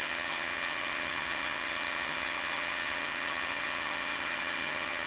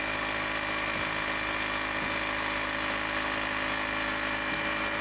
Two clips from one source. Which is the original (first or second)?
second